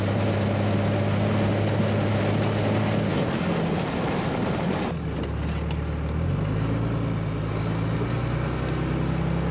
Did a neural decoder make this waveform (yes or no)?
no